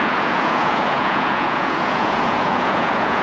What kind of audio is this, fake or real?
fake